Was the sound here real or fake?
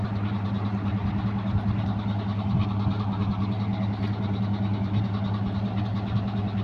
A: real